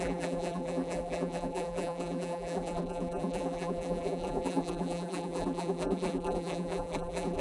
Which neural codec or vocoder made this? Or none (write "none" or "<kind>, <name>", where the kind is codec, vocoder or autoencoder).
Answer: vocoder, BigVGAN v2